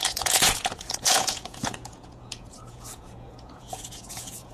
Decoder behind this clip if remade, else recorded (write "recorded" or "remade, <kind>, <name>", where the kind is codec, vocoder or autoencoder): remade, vocoder, Vocos